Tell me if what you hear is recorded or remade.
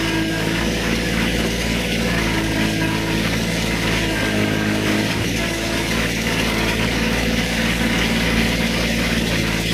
remade